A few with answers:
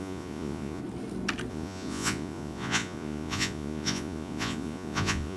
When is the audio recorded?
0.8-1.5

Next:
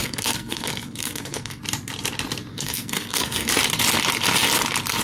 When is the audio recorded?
1.6-2.5; 3.5-5.0

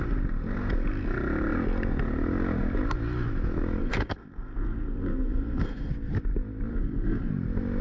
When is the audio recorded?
0.0-3.8; 5.9-6.7; 7.3-7.8

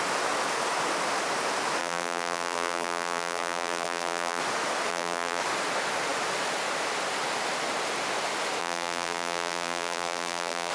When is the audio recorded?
0.0-1.8; 4.4-4.9; 5.4-8.6

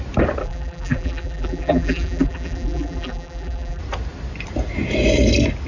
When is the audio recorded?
0.0-0.4; 3.8-5.7

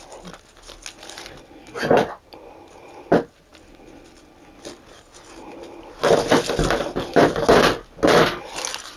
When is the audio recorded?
0.0-9.0